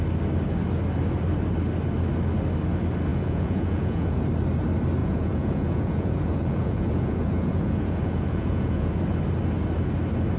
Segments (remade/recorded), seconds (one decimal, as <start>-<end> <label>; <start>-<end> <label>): 0.0-3.1 recorded; 3.1-4.2 remade; 4.2-5.0 recorded; 5.0-8.9 remade; 8.9-10.4 recorded